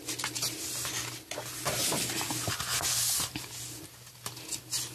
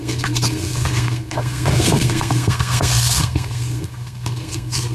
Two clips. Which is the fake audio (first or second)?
second